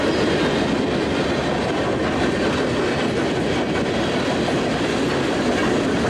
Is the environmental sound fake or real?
real